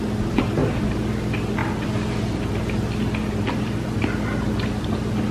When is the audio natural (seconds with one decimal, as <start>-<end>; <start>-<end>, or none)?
0.0-5.3